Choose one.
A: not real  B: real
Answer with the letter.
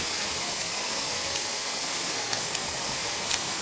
A